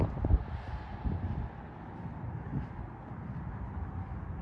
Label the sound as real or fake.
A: real